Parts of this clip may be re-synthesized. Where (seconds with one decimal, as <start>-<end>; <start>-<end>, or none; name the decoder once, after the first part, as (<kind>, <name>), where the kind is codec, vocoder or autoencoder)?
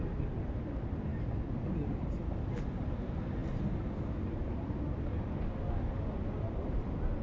3.4-4.0 (vocoder, BigVGAN v2)